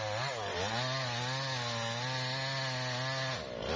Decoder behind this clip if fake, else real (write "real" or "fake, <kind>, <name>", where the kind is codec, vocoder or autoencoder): real